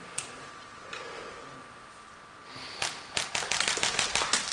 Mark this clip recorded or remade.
recorded